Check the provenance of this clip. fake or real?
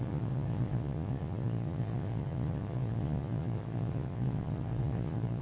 fake